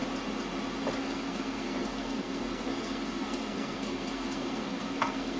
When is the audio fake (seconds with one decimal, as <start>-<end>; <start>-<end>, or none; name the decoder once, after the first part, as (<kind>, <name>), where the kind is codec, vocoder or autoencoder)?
1.0-5.4 (codec, SNAC)